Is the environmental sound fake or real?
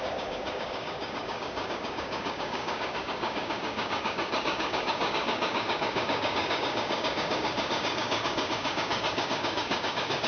fake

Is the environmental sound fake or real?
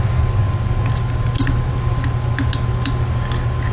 real